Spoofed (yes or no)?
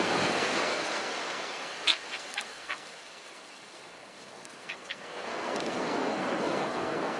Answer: yes